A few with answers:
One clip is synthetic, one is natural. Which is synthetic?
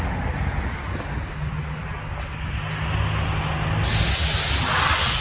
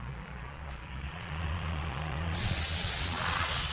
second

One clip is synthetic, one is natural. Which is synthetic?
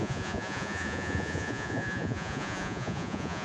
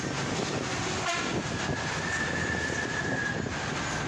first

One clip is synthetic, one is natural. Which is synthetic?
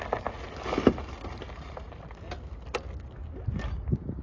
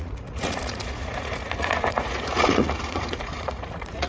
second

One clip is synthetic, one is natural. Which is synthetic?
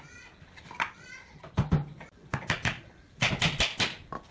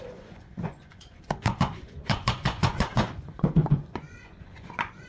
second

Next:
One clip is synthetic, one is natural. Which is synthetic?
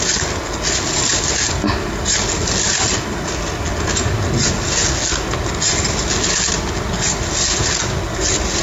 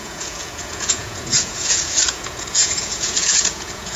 second